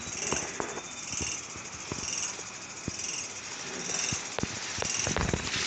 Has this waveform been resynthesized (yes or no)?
no